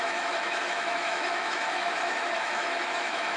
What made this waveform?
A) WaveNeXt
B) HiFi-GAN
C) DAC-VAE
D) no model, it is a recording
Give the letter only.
C